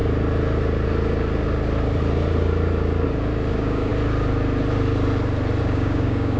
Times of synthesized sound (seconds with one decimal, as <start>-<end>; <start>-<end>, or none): 3.5-3.9; 5.6-6.4